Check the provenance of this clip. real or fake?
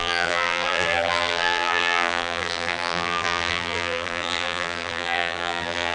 fake